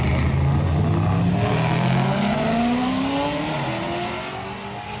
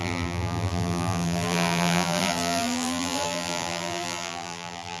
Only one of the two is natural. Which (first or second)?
first